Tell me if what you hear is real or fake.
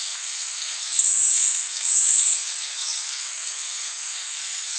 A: fake